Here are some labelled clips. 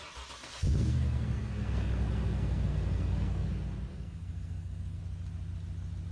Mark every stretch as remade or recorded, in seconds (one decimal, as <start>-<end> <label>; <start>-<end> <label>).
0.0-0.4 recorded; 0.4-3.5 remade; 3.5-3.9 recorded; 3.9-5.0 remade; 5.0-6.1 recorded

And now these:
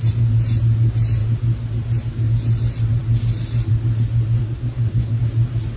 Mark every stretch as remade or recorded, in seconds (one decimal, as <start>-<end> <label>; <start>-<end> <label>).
0.0-4.4 recorded; 4.4-5.2 remade; 5.2-5.8 recorded

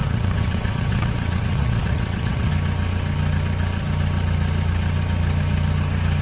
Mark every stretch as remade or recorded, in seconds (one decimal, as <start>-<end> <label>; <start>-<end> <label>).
0.0-2.5 remade; 2.5-6.2 recorded

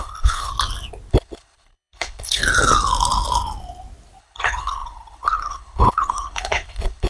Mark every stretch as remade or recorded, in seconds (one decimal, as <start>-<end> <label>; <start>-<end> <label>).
0.0-0.5 remade; 0.5-1.1 recorded; 1.1-2.4 remade; 2.4-4.2 recorded; 4.2-7.1 remade